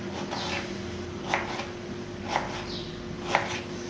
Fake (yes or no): no